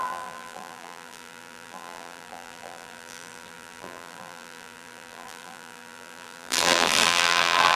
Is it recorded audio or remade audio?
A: remade